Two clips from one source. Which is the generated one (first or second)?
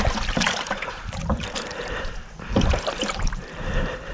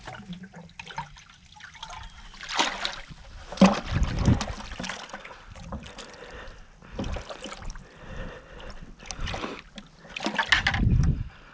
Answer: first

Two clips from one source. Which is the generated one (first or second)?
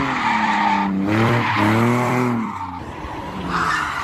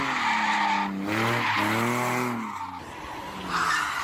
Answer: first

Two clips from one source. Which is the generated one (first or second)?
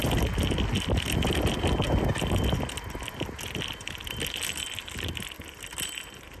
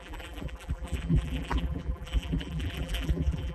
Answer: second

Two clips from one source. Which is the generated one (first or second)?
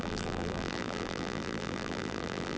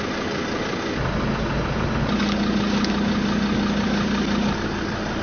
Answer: first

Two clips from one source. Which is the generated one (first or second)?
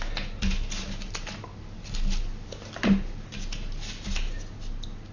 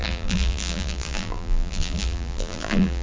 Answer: second